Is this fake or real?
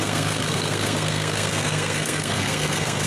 fake